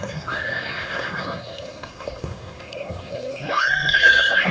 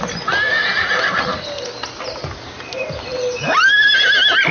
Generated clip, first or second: first